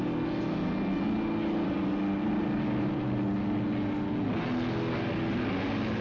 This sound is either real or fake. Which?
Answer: real